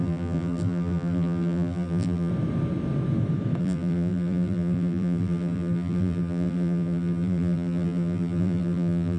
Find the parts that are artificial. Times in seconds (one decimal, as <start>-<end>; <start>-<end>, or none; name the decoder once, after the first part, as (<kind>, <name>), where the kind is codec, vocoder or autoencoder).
0.0-2.3 (vocoder, BigVGAN v2); 3.6-9.2